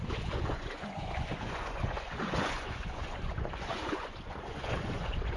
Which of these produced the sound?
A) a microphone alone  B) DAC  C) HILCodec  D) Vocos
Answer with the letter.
D